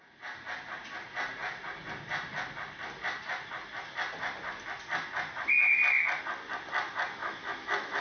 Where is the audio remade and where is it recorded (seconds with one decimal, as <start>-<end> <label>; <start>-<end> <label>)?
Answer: 0.0-7.2 recorded; 7.2-8.0 remade